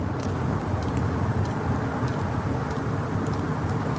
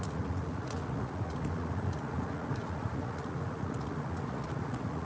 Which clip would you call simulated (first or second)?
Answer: second